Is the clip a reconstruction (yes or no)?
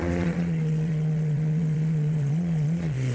yes